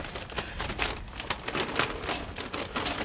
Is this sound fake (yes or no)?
no